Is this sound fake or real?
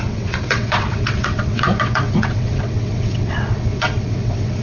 fake